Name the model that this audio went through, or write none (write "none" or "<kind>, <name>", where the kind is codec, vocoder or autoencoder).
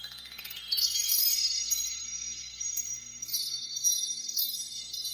codec, SNAC